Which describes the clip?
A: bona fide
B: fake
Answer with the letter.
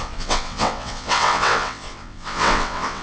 B